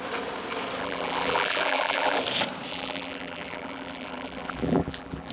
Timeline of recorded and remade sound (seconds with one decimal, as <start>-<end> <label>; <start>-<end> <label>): 0.0-0.8 recorded; 0.8-2.2 remade; 2.2-2.7 recorded; 2.7-5.3 remade